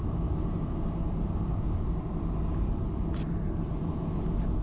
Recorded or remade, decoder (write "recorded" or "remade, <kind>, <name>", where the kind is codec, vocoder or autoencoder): recorded